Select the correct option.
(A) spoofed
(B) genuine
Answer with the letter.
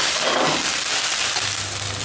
B